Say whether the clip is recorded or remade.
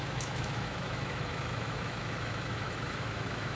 remade